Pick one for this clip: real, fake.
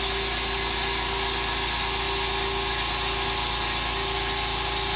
real